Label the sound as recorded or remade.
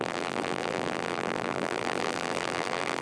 remade